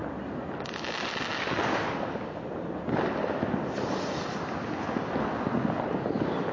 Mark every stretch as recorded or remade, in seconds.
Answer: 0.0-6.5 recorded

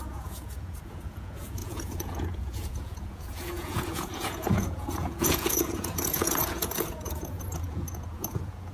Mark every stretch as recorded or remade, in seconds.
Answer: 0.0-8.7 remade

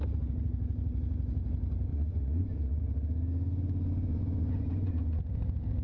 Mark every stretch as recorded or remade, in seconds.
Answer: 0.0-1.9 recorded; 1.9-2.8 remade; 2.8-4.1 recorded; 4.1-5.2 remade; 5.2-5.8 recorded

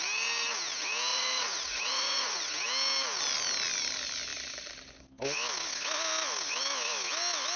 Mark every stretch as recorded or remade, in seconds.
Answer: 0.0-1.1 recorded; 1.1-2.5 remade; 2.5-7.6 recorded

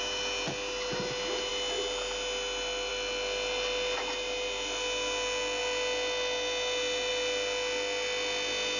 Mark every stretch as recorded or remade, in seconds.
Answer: 0.0-8.8 recorded

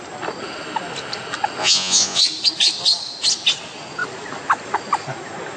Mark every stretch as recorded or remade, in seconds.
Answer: 0.0-1.6 recorded; 1.6-2.2 remade; 2.2-5.6 recorded

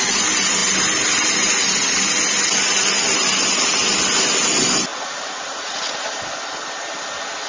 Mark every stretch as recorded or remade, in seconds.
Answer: 0.0-4.9 recorded; 4.9-5.9 remade; 5.9-7.5 recorded